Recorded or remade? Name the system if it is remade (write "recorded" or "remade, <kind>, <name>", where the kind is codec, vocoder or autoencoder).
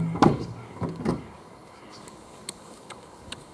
remade, codec, DAC